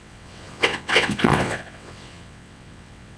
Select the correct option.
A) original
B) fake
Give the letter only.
B